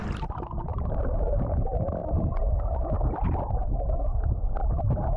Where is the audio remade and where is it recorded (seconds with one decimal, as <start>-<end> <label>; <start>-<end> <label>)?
0.0-0.7 recorded; 0.7-1.3 remade; 1.3-5.2 recorded